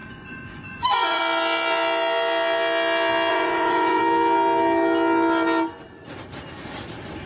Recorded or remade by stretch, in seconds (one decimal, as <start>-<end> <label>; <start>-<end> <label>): 0.0-1.2 remade; 1.2-3.3 recorded; 3.3-4.0 remade; 4.0-7.3 recorded